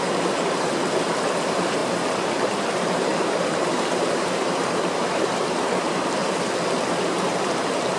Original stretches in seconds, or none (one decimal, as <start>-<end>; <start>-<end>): 6.2-6.9